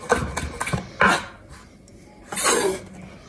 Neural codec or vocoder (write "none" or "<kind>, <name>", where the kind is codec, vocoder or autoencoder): none